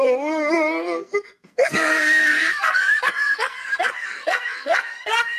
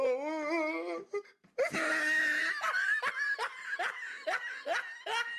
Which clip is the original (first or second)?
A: second